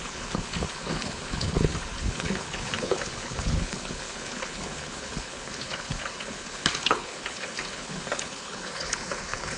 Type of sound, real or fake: fake